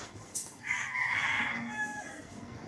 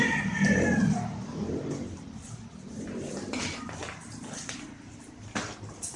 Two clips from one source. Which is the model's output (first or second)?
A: first